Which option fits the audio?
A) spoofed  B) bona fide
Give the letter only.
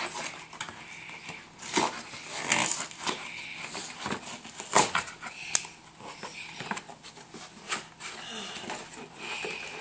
B